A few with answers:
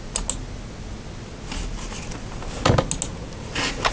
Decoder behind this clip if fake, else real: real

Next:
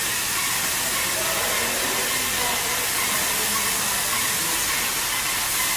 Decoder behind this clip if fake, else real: real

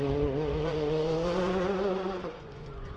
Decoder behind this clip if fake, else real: fake, vocoder, Vocos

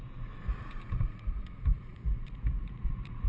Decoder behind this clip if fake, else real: fake, vocoder, Vocos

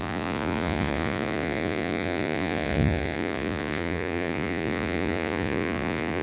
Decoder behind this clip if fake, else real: fake, vocoder, Vocos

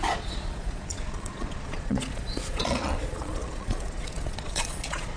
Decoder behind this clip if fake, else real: fake, vocoder, Vocos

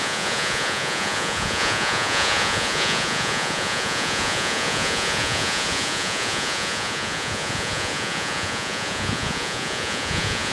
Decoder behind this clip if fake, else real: fake, vocoder, Vocos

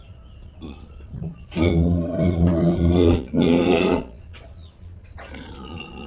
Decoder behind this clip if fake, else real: fake, vocoder, Vocos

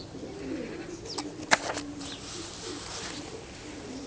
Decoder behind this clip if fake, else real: real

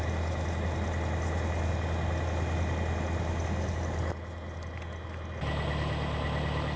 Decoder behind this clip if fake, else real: real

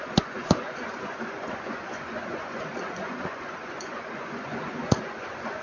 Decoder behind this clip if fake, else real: fake, vocoder, Vocos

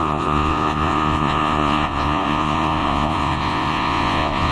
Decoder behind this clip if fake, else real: fake, vocoder, Vocos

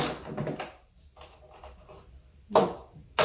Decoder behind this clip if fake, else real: real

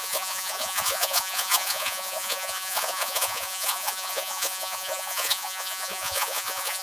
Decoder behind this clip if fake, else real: fake, vocoder, Vocos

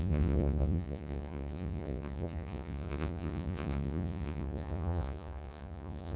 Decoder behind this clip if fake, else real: fake, vocoder, Vocos